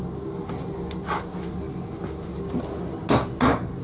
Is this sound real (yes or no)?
yes